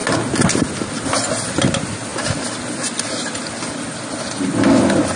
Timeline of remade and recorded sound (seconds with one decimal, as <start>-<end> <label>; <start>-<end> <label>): 0.0-5.2 recorded